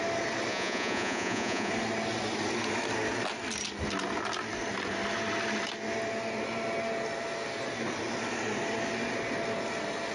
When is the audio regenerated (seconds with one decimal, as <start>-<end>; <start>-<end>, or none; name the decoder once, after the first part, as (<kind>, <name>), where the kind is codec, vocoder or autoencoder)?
0.5-1.7 (vocoder, Vocos)